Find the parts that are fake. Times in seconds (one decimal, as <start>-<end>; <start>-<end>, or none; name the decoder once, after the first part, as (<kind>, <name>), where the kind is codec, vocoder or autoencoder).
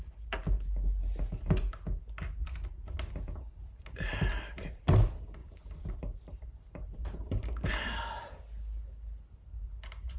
none